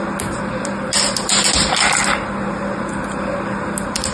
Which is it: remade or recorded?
recorded